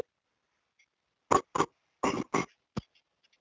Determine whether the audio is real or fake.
real